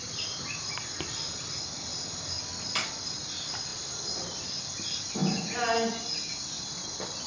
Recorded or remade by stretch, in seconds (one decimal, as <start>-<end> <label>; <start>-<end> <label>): 0.0-5.2 remade; 5.2-5.9 recorded; 5.9-7.3 remade